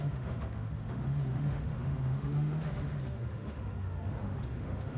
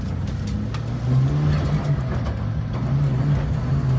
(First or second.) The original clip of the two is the second